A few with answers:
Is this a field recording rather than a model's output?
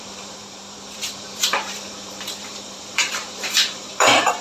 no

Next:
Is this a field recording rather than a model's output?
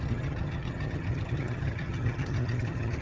no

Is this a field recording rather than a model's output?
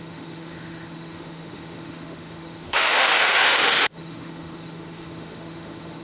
no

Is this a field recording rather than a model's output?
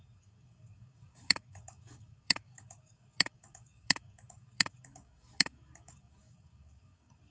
no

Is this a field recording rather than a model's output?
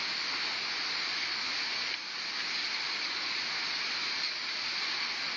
yes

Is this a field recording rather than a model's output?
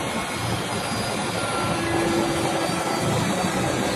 yes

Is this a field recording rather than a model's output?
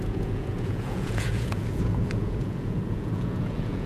no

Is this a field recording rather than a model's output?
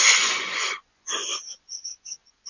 no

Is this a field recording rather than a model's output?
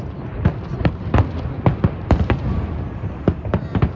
no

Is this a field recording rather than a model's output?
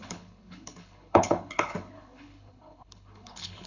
no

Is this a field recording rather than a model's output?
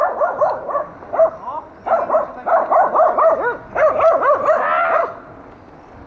yes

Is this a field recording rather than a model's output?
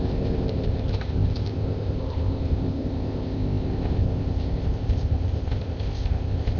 no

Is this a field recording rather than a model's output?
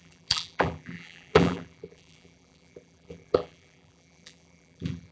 no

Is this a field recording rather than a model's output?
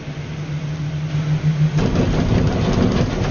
yes